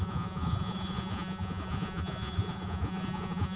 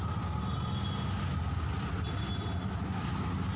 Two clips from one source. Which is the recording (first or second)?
second